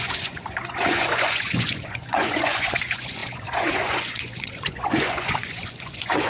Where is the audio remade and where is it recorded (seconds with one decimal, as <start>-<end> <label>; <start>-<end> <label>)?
0.0-6.3 remade